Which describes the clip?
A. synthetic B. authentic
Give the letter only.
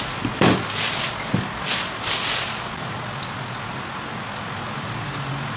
B